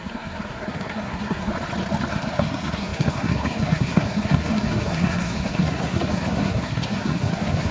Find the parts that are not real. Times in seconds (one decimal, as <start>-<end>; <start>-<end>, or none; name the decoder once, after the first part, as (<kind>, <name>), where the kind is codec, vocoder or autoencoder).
0.0-1.5 (codec, SNAC); 2.1-7.7